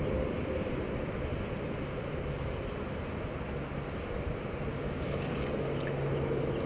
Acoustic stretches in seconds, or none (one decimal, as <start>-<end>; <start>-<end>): 0.0-4.7; 5.6-6.7